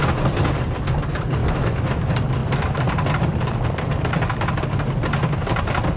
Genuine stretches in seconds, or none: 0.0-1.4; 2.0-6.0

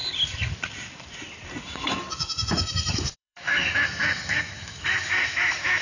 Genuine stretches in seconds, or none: 0.0-1.6

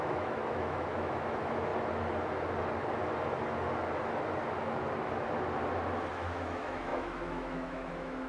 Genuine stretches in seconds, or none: 1.7-6.1

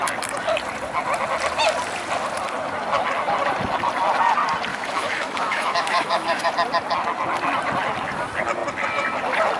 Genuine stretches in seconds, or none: 0.0-4.7; 6.5-9.6